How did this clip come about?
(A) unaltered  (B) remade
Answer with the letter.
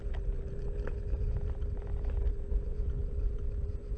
A